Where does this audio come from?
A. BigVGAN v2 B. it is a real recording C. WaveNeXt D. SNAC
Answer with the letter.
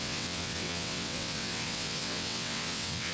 C